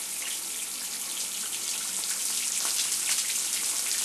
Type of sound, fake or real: real